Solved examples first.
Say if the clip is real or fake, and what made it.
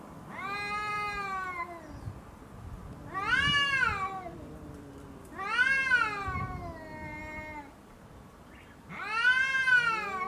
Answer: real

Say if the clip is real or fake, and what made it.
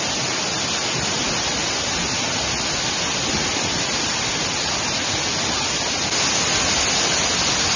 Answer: real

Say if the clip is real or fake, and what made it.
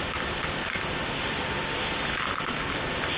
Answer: real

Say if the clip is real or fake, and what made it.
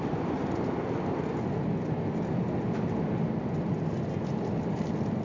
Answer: real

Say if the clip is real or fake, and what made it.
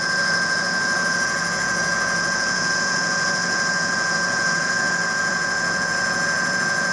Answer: fake, vocoder, Vocos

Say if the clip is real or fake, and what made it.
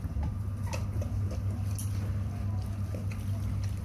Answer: real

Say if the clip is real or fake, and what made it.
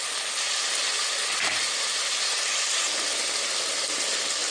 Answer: real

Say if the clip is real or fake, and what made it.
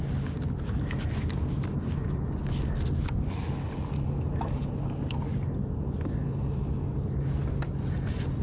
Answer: real